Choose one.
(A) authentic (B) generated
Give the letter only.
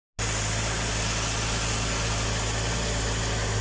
A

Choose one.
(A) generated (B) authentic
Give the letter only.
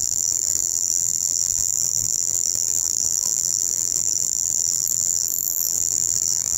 A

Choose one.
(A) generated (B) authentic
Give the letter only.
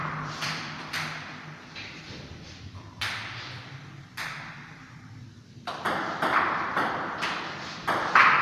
A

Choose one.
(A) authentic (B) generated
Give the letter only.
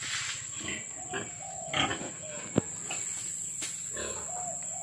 A